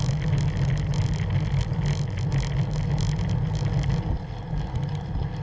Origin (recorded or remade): recorded